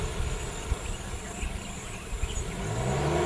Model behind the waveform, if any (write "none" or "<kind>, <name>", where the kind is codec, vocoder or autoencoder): none